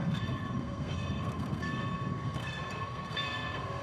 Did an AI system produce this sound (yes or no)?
yes